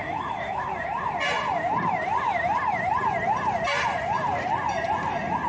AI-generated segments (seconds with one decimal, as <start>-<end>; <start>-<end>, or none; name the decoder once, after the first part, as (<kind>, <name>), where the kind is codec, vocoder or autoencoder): 0.0-0.7 (autoencoder, DAC-VAE)